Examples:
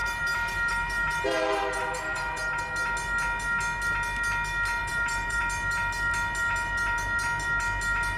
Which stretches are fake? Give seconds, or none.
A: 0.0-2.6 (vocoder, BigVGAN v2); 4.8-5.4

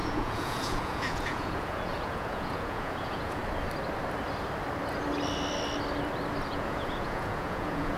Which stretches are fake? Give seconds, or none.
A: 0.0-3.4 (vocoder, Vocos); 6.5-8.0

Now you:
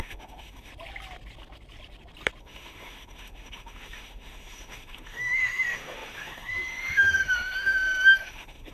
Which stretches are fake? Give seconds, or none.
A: 0.0-0.7 (autoencoder, DAC-VAE); 2.4-8.7

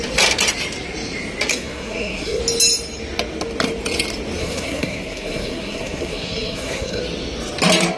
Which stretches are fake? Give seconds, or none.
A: 1.5-2.4 (codec, SNAC); 4.4-7.0